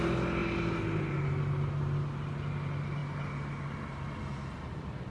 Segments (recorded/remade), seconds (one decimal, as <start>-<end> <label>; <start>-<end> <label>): 0.0-5.1 recorded